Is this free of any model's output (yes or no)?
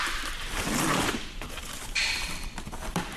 no